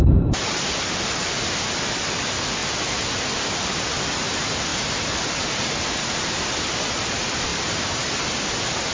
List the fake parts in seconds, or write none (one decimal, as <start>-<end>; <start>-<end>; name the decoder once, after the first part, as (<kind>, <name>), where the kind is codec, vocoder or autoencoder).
2.6-4.2 (vocoder, BigVGAN v2); 4.7-5.2; 7.5-8.3